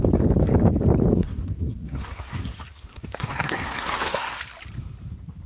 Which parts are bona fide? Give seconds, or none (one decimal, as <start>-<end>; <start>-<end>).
0.0-1.1; 4.4-5.5

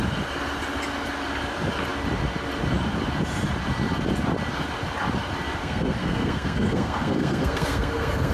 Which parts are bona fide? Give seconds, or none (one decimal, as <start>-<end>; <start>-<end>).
0.0-5.6

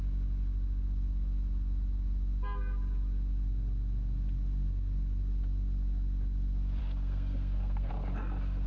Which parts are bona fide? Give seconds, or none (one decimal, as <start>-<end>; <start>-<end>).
0.0-6.8; 7.9-8.7

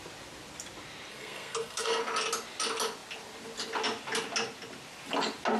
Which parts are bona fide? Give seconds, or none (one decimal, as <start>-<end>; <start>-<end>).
0.0-1.1; 2.0-5.6

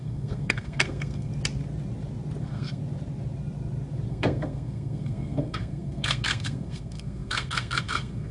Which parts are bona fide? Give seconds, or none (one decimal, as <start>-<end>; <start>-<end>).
1.3-2.4; 2.8-4.1

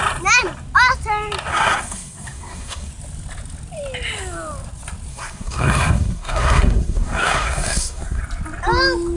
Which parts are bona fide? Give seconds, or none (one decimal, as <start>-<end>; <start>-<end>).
0.0-1.5; 2.9-5.1; 8.2-9.2

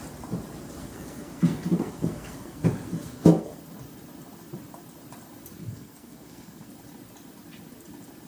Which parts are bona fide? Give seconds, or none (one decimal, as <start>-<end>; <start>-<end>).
0.0-0.8; 3.6-5.6; 6.7-8.3

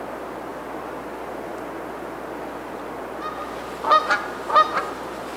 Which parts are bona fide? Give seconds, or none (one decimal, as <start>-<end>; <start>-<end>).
0.0-5.4